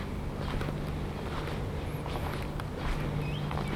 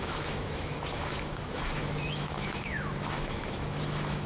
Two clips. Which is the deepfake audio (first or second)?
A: second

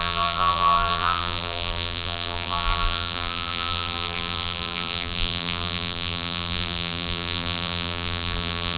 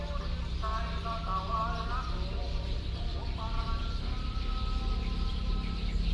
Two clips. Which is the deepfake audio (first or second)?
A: first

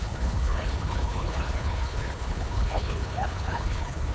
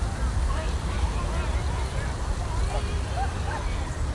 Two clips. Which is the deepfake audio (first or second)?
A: first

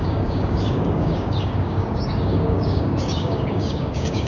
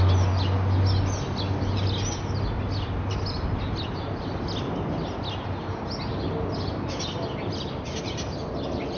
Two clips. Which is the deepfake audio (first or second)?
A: first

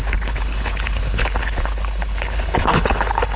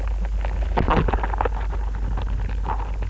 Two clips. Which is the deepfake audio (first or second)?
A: first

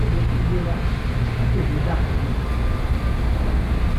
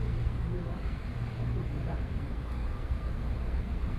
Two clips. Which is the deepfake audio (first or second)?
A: second